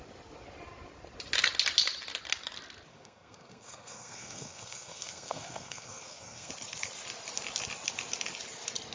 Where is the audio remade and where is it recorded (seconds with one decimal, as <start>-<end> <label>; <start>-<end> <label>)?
0.0-2.9 recorded; 2.9-6.5 remade; 6.5-8.9 recorded

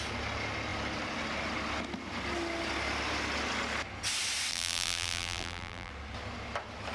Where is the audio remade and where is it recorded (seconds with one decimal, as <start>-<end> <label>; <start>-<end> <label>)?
0.0-4.5 recorded; 4.5-5.9 remade; 5.9-6.9 recorded

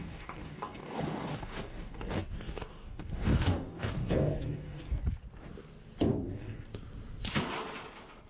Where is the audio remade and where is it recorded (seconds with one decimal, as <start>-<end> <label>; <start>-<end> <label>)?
0.0-5.0 remade; 5.0-6.1 recorded; 6.1-6.7 remade; 6.7-8.3 recorded

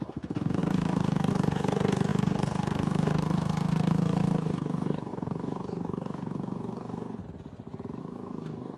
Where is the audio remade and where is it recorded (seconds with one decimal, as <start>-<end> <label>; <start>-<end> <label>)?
0.0-7.2 remade; 7.2-8.0 recorded; 8.0-8.8 remade

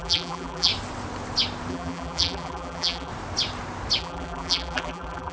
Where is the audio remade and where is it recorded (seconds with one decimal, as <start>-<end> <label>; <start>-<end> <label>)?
0.0-0.7 remade; 0.7-1.7 recorded; 1.7-3.1 remade; 3.1-4.0 recorded; 4.0-5.3 remade